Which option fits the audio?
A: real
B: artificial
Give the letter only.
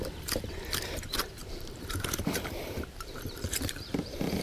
B